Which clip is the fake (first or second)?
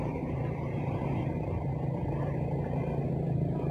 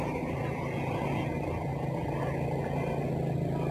first